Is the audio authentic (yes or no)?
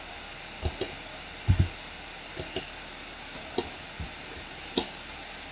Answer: yes